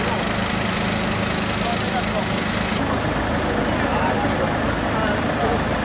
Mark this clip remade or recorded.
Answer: recorded